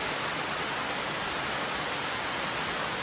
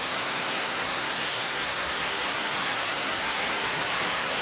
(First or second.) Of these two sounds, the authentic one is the first